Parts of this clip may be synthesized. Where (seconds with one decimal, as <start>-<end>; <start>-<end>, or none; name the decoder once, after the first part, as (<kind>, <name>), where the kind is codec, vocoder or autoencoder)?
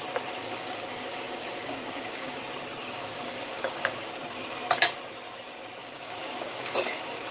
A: 0.4-2.4 (codec, DAC); 2.8-4.2; 5.8-7.3